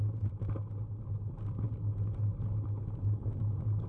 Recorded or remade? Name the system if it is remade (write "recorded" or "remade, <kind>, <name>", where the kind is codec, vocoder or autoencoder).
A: recorded